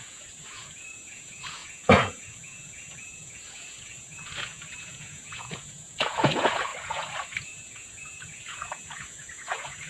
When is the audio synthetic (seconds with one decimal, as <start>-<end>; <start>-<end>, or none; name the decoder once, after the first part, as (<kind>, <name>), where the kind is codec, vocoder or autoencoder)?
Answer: 0.0-9.9 (vocoder, Vocos)